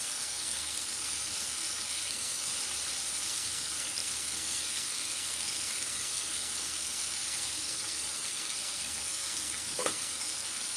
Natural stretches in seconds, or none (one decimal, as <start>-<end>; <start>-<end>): 2.5-3.1